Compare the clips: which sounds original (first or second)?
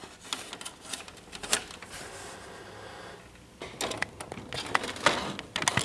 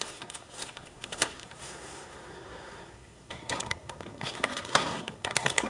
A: first